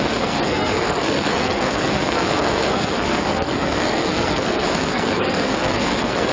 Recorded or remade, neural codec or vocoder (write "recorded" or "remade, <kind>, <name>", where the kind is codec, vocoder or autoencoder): remade, codec, SNAC